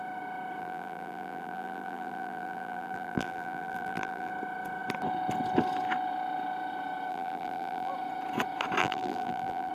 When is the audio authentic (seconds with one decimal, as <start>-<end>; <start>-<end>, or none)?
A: 0.0-0.6; 4.3-7.1; 7.9-8.8